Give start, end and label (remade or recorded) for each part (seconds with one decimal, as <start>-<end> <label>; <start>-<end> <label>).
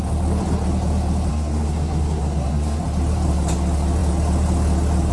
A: 0.0-1.3 recorded; 1.3-2.8 remade; 2.8-5.1 recorded